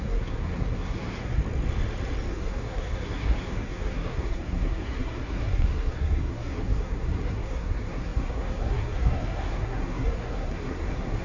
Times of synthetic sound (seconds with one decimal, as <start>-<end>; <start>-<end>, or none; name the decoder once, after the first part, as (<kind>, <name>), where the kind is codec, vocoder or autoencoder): 0.0-1.4 (codec, SNAC); 2.3-11.2

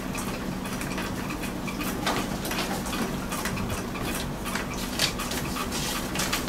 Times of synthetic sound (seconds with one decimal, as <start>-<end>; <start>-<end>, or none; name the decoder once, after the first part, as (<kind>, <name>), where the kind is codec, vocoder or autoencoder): none

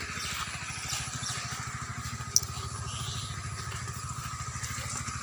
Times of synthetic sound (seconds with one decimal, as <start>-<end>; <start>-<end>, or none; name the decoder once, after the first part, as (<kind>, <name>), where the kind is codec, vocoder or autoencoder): none

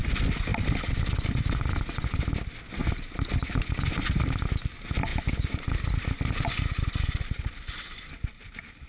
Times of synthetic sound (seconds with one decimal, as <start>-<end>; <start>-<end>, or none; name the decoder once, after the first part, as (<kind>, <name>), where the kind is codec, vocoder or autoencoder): none

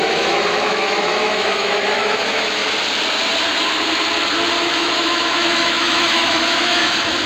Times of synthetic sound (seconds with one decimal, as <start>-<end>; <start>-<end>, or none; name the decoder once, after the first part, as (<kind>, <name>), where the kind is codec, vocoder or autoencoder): 0.0-2.6 (autoencoder, DAC-VAE); 4.6-7.3

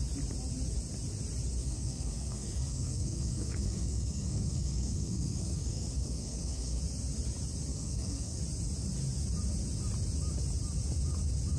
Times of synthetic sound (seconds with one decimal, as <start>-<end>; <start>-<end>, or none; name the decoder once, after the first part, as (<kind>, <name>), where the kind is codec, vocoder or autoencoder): 1.6-6.8 (codec, SNAC); 7.7-8.4

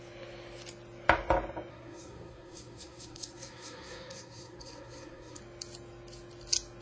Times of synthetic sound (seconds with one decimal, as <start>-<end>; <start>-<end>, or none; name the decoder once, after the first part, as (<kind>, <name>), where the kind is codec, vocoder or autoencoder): 1.7-5.4 (codec, SNAC)